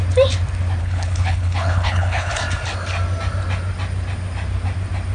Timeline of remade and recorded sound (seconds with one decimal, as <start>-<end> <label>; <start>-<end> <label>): 0.0-0.8 recorded; 0.8-2.3 remade; 2.3-5.1 recorded